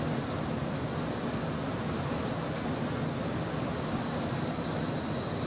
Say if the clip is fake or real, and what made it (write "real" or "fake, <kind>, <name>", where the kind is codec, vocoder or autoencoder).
real